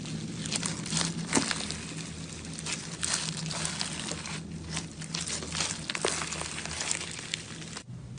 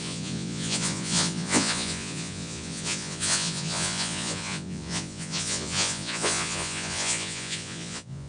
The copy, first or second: second